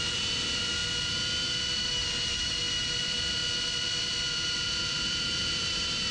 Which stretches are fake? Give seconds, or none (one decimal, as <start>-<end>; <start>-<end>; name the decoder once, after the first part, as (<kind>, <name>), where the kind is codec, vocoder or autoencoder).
0.0-0.8 (vocoder, BigVGAN v2); 3.0-6.1